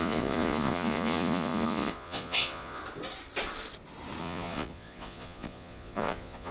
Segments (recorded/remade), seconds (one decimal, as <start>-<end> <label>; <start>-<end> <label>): 0.0-2.8 remade; 2.8-4.2 recorded; 4.2-6.5 remade